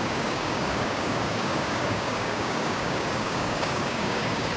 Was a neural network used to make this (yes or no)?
yes